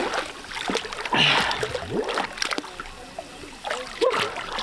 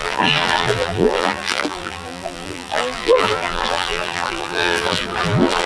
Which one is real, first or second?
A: first